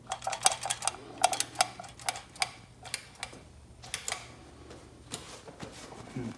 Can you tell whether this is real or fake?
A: real